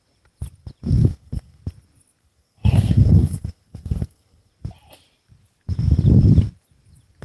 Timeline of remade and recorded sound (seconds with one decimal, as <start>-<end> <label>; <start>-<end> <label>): 0.0-1.0 recorded; 1.0-1.6 remade; 1.6-2.2 recorded; 2.2-4.5 remade; 4.5-7.2 recorded